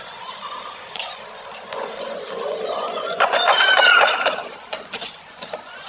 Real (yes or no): no